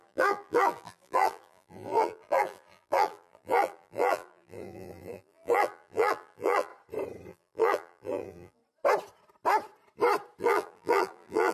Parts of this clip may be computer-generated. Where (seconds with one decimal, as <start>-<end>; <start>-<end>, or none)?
0.0-6.7; 7.3-8.6; 10.4-11.5